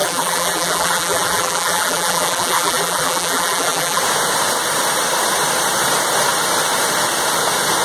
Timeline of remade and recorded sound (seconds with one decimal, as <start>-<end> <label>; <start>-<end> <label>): 0.0-4.0 remade; 4.0-7.8 recorded